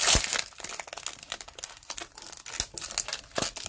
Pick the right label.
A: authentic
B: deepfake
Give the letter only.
A